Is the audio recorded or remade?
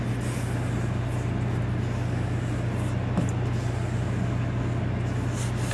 recorded